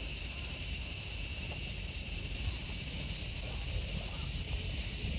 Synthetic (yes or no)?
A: no